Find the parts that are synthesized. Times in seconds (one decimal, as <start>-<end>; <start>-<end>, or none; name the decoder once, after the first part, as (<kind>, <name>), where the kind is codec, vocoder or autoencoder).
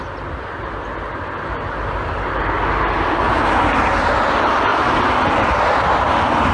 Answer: none